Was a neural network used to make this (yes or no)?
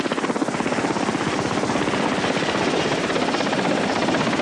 no